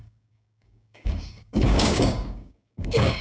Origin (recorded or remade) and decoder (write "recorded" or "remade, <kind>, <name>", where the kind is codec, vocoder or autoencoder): remade, codec, DAC